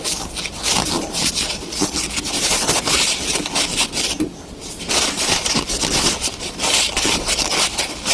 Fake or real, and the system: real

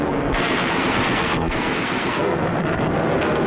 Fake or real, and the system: fake, codec, SNAC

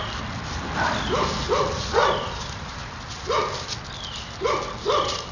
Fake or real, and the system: real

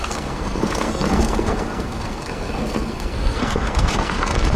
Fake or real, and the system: fake, codec, SNAC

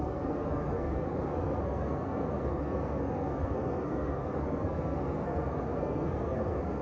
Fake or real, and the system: fake, codec, SNAC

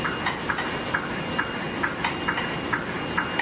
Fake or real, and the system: real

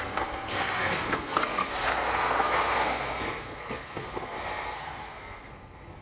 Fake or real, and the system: fake, codec, SNAC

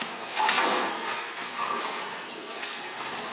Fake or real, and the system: fake, codec, SNAC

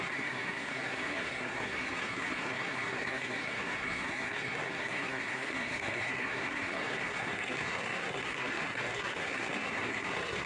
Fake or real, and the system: fake, codec, SNAC